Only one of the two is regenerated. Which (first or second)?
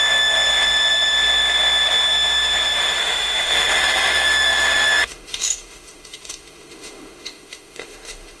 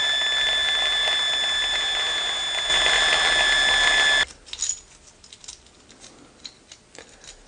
first